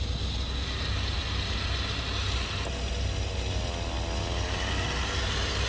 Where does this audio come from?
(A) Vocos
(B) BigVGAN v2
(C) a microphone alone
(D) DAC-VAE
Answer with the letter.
C